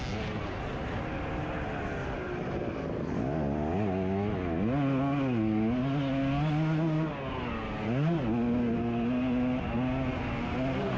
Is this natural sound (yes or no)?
yes